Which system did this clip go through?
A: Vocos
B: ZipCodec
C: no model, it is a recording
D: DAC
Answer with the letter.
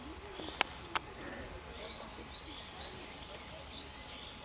C